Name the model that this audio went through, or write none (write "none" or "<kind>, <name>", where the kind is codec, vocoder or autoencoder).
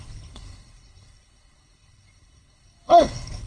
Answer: codec, HILCodec